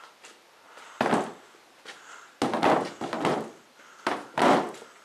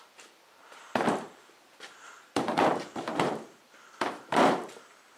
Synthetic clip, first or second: second